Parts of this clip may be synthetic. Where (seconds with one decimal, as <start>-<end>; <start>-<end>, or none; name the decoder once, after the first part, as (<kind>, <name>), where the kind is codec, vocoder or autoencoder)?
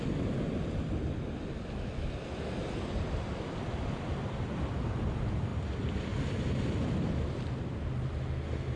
none